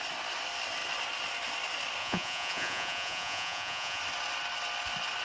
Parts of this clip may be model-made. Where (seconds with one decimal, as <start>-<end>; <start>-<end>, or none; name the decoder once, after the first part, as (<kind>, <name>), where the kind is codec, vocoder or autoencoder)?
2.0-4.0 (vocoder, Vocos)